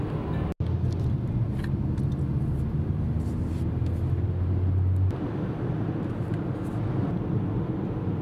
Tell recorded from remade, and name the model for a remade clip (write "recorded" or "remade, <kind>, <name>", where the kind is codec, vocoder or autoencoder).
recorded